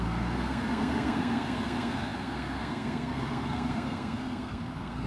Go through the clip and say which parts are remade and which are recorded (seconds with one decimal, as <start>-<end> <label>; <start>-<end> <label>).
0.0-5.1 remade